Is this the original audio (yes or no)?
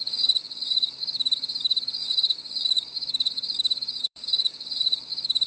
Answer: no